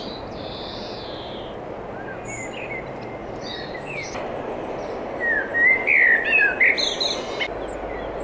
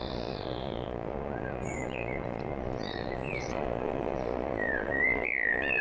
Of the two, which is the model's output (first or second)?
second